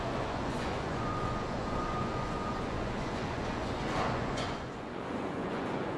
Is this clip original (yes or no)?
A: no